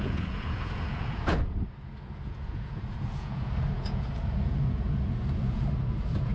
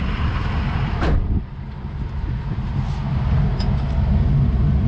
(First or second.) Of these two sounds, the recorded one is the second